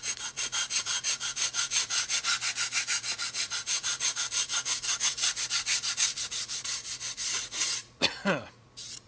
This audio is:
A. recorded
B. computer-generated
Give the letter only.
B